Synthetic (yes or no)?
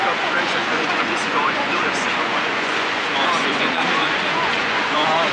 yes